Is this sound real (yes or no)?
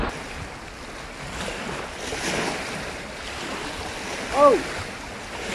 yes